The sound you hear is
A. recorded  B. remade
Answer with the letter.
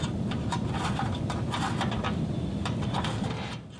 B